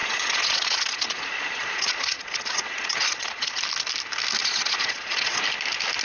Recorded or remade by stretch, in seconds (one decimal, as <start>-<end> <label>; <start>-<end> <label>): 0.0-3.6 remade; 3.6-4.4 recorded; 4.4-5.4 remade; 5.4-6.0 recorded